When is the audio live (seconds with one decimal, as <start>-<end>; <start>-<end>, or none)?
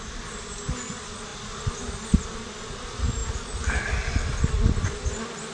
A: 0.0-5.5